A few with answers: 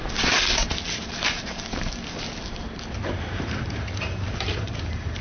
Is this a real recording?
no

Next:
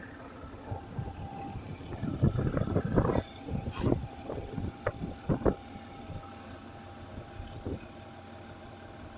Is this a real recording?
yes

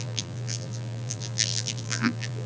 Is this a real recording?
no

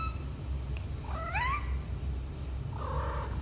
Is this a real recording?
yes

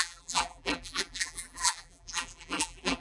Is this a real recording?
no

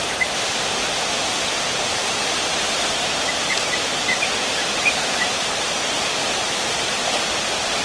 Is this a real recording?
no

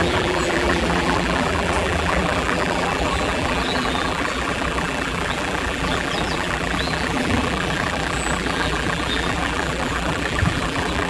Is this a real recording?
no